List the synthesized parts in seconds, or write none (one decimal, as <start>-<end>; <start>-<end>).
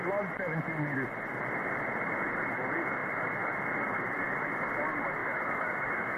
5.2-6.2